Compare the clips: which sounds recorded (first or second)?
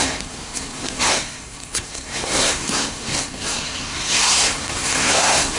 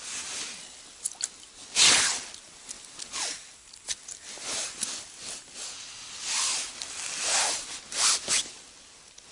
second